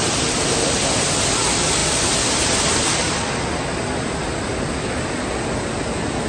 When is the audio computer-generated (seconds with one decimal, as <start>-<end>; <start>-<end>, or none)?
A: none